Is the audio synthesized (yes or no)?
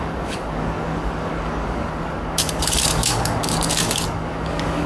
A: yes